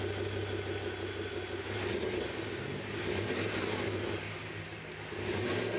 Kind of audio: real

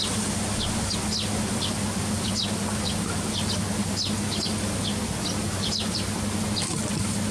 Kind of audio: real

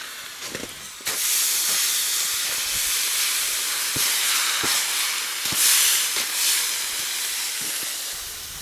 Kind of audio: real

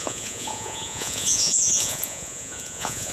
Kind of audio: fake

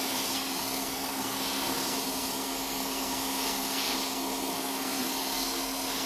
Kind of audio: fake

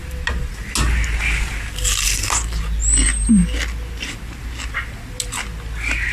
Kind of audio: real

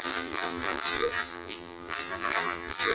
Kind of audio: fake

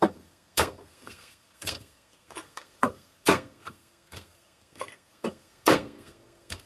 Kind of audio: fake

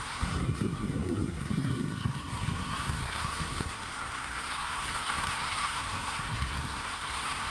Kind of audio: fake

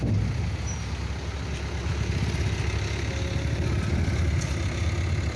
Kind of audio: real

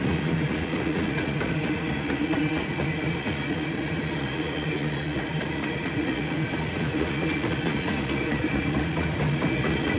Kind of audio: fake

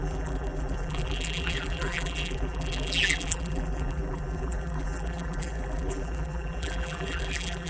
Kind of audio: fake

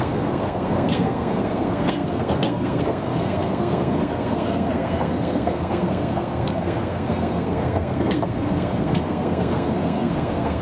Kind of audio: fake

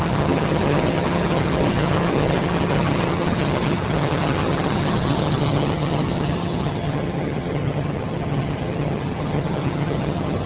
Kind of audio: fake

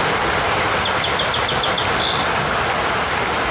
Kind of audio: real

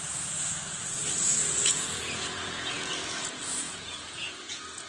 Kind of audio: fake